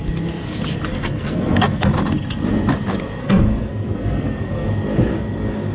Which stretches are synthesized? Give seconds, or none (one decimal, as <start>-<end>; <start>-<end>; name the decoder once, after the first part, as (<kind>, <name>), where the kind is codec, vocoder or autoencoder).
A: 0.9-1.9 (codec, SNAC); 3.2-4.7